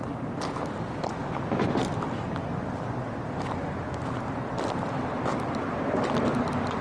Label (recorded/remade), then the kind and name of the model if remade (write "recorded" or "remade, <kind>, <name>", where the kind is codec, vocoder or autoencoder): recorded